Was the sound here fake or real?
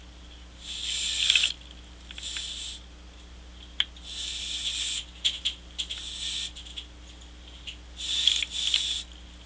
real